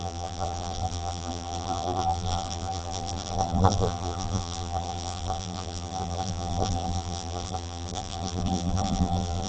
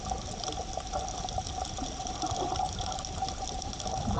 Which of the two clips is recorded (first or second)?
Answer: second